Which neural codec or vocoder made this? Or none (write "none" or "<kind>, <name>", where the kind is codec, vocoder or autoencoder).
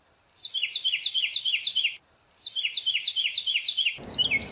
none